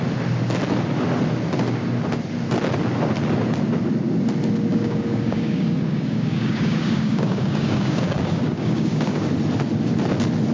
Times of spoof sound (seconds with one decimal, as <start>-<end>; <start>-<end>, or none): 4.7-9.3

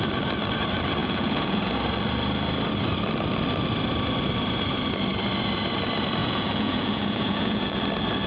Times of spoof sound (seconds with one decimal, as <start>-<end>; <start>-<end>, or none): 1.0-1.7; 6.2-7.8

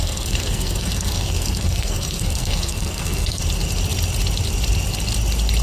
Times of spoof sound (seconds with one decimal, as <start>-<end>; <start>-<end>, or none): 0.0-3.4